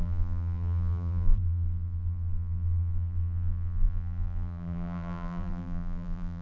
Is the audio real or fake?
fake